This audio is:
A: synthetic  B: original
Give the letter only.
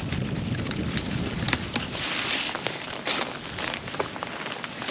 B